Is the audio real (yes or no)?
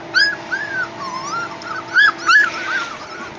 yes